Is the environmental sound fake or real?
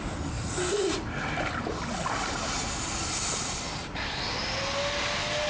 real